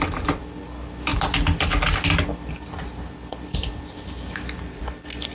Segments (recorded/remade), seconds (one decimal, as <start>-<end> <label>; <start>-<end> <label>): 0.0-5.3 recorded